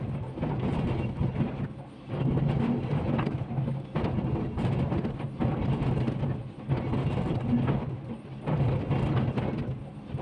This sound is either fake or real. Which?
real